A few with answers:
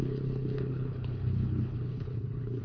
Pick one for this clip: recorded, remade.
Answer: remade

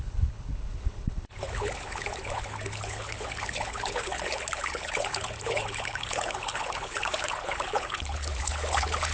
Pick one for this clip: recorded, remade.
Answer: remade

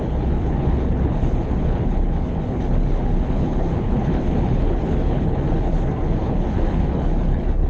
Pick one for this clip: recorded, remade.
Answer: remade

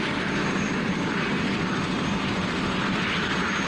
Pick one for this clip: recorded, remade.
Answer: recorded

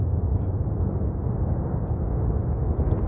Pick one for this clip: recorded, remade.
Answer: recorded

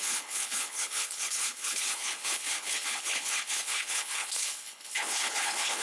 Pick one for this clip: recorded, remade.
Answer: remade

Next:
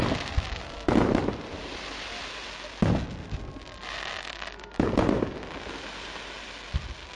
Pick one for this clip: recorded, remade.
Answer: recorded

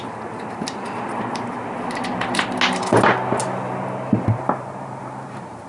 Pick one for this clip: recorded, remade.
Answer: recorded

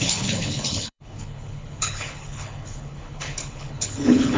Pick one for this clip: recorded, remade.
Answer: remade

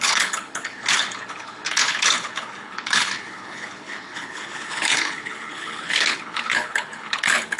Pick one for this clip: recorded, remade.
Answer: remade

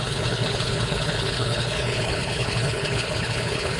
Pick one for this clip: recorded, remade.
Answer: remade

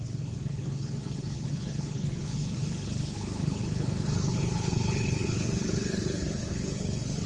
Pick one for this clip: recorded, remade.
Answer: remade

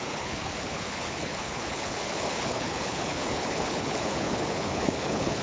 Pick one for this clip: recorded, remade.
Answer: remade